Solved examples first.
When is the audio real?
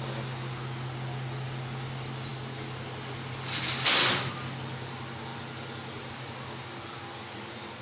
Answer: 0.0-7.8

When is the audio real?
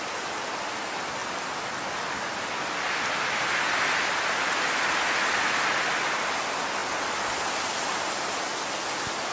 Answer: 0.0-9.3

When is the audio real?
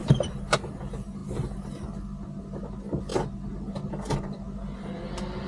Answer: 0.0-5.5